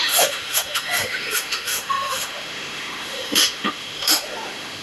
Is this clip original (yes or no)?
no